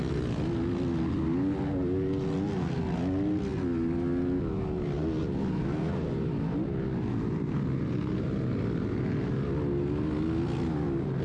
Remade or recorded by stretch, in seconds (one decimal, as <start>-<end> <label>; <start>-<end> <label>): 0.0-11.2 recorded